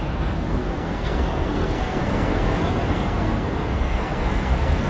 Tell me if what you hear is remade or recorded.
remade